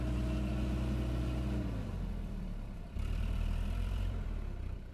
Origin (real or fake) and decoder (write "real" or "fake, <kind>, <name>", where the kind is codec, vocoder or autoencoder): fake, vocoder, BigVGAN v2